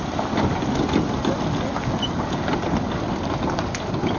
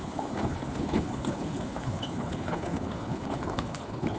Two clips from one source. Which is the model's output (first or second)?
second